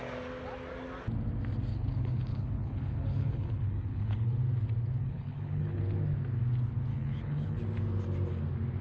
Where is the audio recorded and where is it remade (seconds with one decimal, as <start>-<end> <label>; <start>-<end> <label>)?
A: 0.0-1.7 recorded; 1.7-4.4 remade; 4.4-5.0 recorded; 5.0-5.8 remade; 5.8-6.9 recorded; 6.9-7.6 remade; 7.6-8.8 recorded